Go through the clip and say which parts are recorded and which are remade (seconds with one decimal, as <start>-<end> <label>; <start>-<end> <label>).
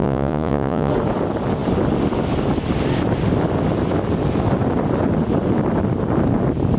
0.0-0.9 remade; 0.9-6.8 recorded